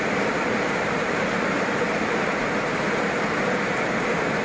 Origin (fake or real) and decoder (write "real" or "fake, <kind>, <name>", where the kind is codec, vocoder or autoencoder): fake, vocoder, BigVGAN v2